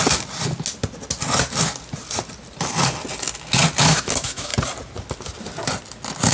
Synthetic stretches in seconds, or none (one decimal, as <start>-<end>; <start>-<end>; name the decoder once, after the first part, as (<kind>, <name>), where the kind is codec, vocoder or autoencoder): 3.8-4.5 (autoencoder, DAC-VAE)